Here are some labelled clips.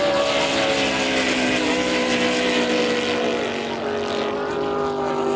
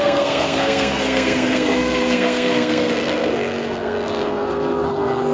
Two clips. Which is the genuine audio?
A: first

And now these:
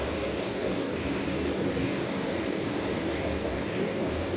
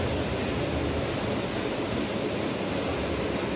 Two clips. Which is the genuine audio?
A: second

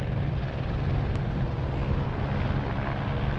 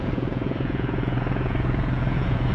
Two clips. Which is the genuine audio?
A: first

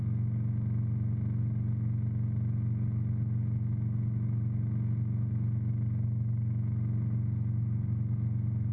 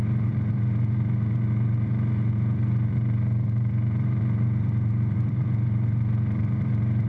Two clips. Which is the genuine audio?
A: first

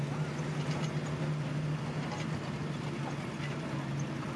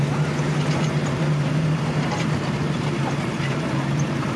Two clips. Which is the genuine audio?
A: first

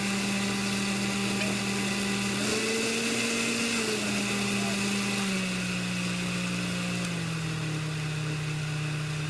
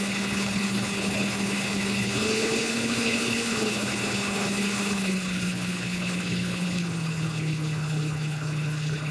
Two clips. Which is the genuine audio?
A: first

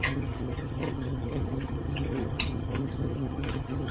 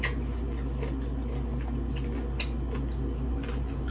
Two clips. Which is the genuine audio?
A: second